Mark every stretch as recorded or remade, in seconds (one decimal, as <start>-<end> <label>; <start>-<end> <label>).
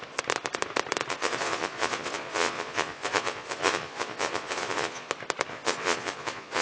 0.0-1.1 recorded; 1.1-5.1 remade; 5.1-5.5 recorded; 5.5-6.6 remade